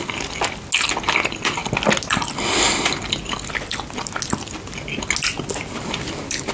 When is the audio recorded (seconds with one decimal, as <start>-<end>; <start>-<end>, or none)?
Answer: 0.0-6.5